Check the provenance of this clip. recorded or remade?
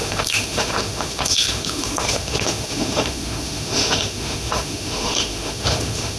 remade